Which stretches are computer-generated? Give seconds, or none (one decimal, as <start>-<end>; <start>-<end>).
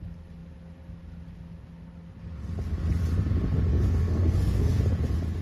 3.7-4.8